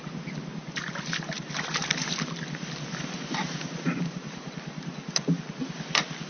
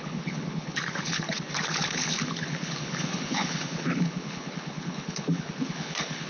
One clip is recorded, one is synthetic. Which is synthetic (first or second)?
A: second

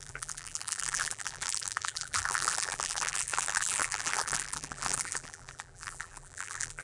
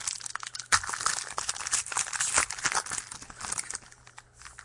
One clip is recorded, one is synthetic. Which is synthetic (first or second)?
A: first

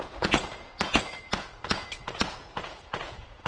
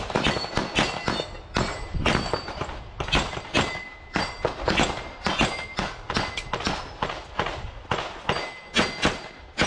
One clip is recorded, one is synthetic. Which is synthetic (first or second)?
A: first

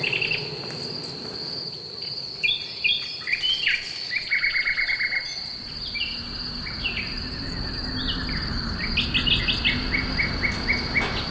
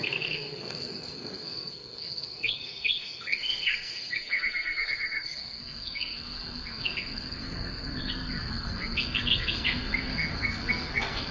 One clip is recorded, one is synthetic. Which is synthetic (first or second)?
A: second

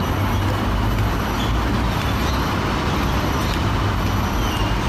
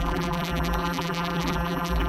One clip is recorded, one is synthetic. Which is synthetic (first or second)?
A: second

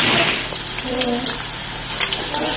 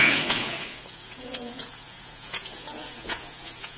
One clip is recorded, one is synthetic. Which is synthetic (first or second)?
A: second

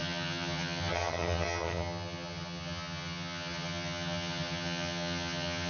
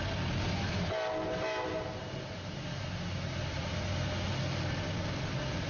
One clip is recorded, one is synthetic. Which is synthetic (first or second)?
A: first